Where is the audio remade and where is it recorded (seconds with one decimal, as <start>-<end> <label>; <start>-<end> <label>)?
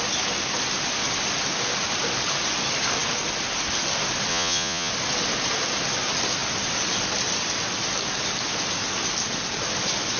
0.0-4.3 recorded; 4.3-4.9 remade; 4.9-10.2 recorded